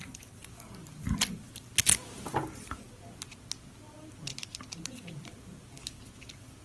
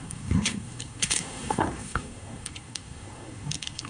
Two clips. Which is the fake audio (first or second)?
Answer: second